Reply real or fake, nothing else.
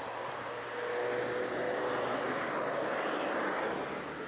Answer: real